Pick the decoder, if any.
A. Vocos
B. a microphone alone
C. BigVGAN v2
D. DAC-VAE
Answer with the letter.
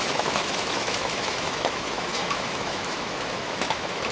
D